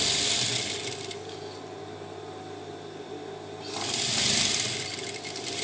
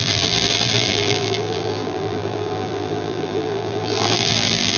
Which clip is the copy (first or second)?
second